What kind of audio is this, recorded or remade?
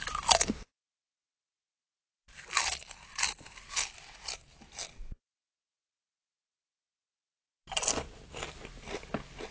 recorded